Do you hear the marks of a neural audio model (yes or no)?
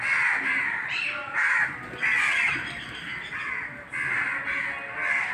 no